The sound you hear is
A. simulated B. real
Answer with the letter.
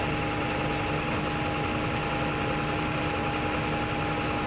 B